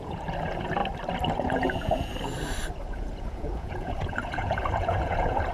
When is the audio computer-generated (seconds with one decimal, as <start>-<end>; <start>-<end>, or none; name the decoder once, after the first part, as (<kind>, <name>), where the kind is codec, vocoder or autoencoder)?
0.0-0.8 (vocoder, Vocos); 1.3-2.1; 2.9-5.5